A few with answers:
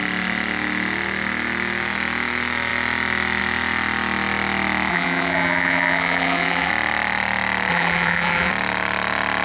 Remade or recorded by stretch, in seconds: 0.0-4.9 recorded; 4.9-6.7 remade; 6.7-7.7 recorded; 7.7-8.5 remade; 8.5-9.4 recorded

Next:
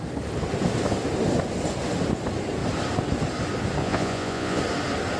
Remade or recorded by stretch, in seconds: 0.0-3.8 recorded; 3.8-4.6 remade; 4.6-5.2 recorded

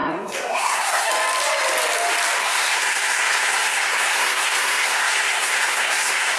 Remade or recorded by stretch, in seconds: 0.0-1.1 remade; 1.1-2.4 recorded; 2.4-6.4 remade

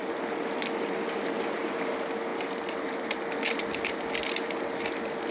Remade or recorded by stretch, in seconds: 0.0-5.3 recorded

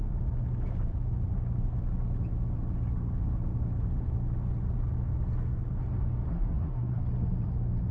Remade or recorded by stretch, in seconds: 0.0-6.3 recorded; 6.3-7.0 remade; 7.0-7.9 recorded

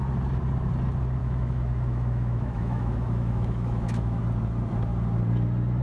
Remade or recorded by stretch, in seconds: 0.0-1.2 recorded; 1.2-4.2 remade; 4.2-5.8 recorded

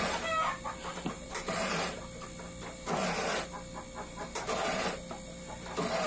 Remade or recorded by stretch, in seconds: 0.0-0.9 recorded; 0.9-2.0 remade; 2.0-6.1 recorded

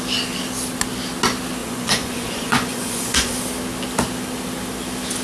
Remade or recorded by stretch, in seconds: 0.0-1.6 recorded; 1.6-3.4 remade; 3.4-5.2 recorded